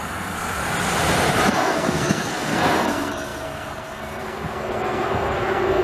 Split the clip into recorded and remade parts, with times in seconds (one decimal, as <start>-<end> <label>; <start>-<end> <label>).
0.0-0.6 remade; 0.6-1.5 recorded; 1.5-5.8 remade